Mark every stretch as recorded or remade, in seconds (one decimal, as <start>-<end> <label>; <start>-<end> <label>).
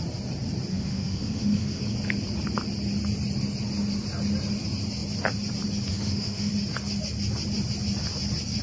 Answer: 0.0-0.7 recorded; 0.7-1.8 remade; 1.8-5.9 recorded; 5.9-6.5 remade; 6.5-8.6 recorded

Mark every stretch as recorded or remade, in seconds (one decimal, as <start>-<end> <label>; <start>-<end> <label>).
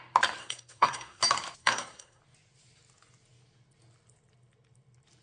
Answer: 0.0-0.4 recorded; 0.4-1.2 remade; 1.2-1.6 recorded; 1.6-2.2 remade; 2.2-5.2 recorded